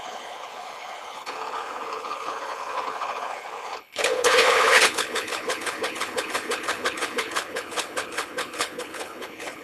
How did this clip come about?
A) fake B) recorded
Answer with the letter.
A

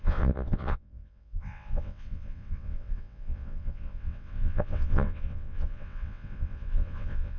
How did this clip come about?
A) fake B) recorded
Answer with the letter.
A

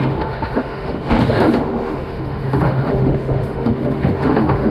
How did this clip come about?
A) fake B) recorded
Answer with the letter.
A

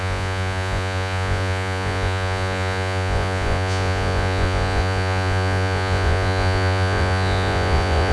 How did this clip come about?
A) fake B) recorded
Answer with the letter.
A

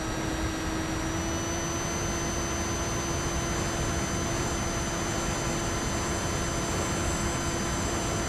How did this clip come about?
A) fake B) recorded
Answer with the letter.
B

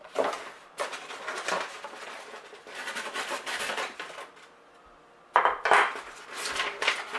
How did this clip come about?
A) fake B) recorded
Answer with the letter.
B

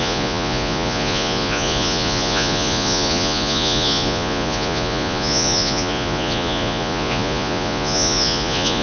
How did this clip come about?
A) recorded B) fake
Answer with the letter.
B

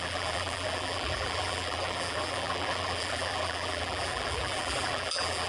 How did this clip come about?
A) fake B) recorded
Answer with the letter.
A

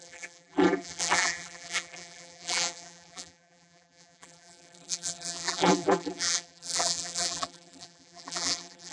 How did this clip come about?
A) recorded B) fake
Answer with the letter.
B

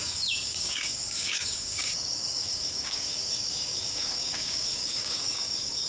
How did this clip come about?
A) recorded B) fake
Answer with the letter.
B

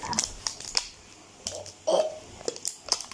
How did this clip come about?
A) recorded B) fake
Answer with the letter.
A